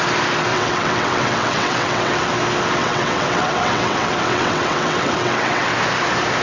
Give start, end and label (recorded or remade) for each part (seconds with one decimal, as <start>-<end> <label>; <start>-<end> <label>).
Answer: 0.0-0.5 recorded; 0.5-2.3 remade; 2.3-2.8 recorded; 2.8-5.7 remade; 5.7-6.4 recorded